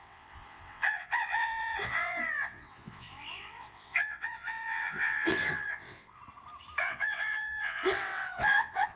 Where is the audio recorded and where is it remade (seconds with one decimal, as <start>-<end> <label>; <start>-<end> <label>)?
0.0-6.2 remade; 6.2-6.8 recorded; 6.8-9.0 remade

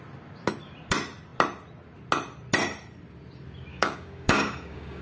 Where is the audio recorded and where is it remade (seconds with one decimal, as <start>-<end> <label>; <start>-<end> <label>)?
0.0-3.7 recorded; 3.7-5.0 remade

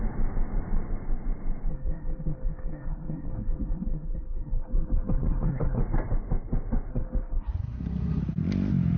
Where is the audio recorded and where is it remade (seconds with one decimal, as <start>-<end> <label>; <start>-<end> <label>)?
0.0-1.7 recorded; 1.7-5.8 remade; 5.8-6.9 recorded; 6.9-8.2 remade; 8.2-9.0 recorded

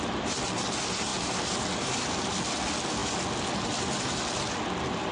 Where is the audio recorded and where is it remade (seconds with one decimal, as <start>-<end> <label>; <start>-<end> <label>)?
0.0-5.1 recorded

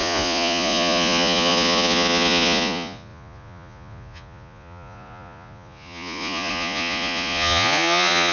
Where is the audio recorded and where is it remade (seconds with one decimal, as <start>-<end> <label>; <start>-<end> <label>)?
0.0-8.3 remade

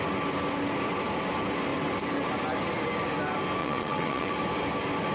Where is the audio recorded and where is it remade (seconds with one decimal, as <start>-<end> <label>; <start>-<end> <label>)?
0.0-3.6 recorded; 3.6-4.3 remade; 4.3-5.1 recorded

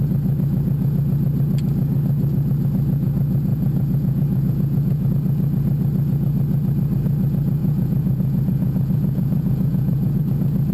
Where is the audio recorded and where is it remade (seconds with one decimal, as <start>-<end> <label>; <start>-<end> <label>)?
0.0-3.5 recorded; 3.5-5.1 remade; 5.1-7.6 recorded; 7.6-10.2 remade; 10.2-10.7 recorded

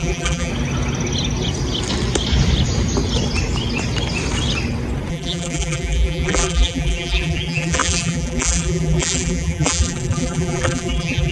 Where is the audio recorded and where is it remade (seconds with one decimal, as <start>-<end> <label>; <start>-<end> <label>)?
0.0-0.5 remade; 0.5-5.1 recorded; 5.1-11.3 remade